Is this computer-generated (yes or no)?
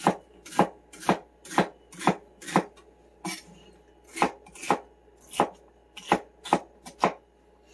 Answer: no